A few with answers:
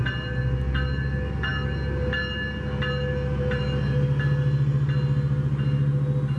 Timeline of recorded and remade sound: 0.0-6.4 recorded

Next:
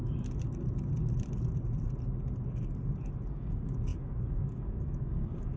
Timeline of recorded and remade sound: 0.0-3.4 recorded; 3.4-5.6 remade

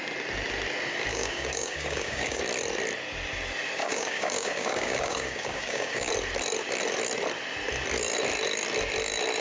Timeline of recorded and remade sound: 0.0-1.1 recorded; 1.1-2.4 remade; 2.4-3.8 recorded; 3.8-6.1 remade; 6.1-9.4 recorded

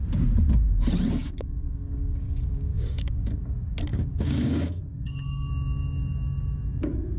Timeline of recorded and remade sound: 0.0-1.2 recorded; 1.2-3.4 remade; 3.4-3.9 recorded; 3.9-5.5 remade; 5.5-7.2 recorded

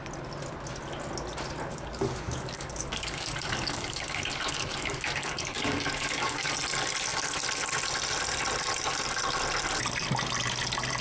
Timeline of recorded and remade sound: 0.0-1.7 recorded; 1.7-6.5 remade; 6.5-11.0 recorded